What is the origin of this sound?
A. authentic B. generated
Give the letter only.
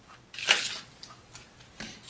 A